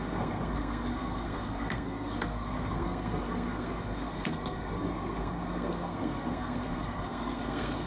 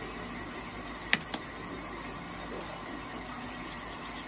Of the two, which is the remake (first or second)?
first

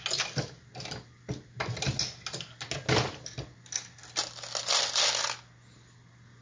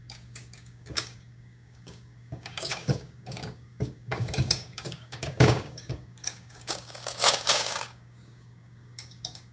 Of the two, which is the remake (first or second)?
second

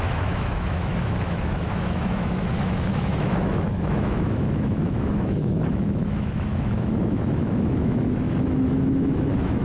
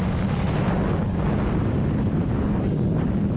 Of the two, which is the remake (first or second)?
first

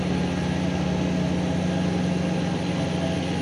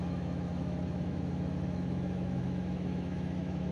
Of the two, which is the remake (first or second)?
second